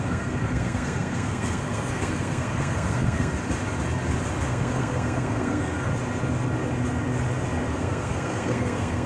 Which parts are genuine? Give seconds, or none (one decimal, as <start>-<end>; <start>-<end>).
3.3-4.5; 5.9-7.7